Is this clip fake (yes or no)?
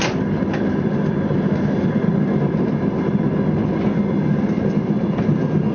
no